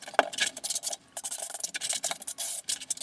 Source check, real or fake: real